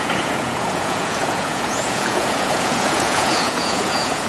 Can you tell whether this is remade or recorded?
remade